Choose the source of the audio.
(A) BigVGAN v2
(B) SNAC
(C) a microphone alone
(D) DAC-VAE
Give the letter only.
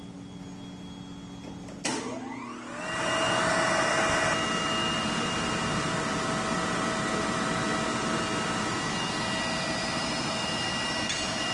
C